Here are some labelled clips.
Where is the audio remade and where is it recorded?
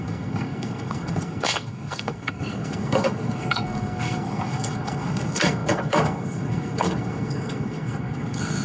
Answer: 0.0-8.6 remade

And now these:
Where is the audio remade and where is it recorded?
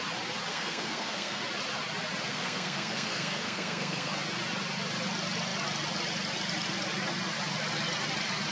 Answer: 0.0-0.5 recorded; 0.5-1.4 remade; 1.4-2.3 recorded; 2.3-4.1 remade; 4.1-8.5 recorded